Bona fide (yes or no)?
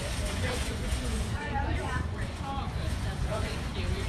no